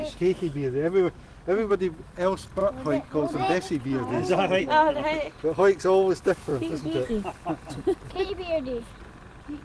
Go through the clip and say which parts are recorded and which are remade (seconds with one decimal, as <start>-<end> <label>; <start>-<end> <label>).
0.0-1.7 remade; 1.7-6.5 recorded; 6.5-7.1 remade; 7.1-9.6 recorded